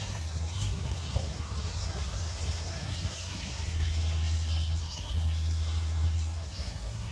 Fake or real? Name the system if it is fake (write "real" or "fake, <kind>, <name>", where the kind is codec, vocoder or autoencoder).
fake, codec, SNAC